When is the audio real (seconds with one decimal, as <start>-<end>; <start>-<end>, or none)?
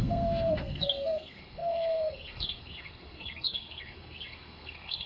none